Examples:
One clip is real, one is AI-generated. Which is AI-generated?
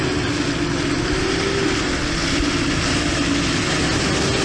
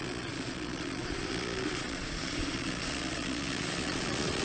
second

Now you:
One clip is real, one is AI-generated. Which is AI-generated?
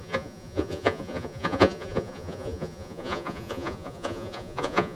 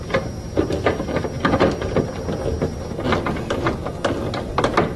first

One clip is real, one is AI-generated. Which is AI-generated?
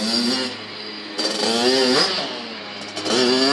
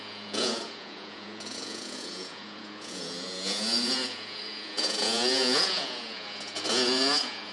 second